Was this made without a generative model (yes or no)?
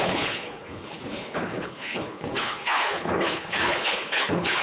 no